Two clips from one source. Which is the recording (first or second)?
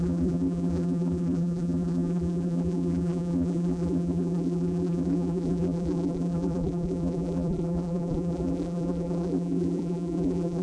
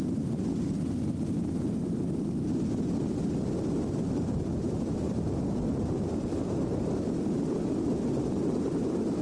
second